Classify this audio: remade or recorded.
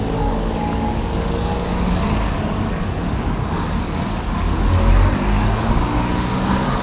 remade